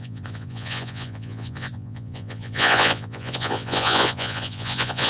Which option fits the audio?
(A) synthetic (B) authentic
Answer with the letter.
A